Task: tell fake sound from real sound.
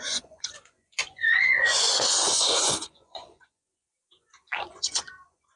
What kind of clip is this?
fake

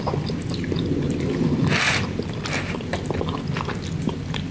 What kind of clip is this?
real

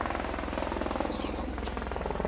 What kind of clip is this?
real